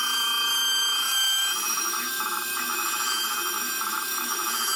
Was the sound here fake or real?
fake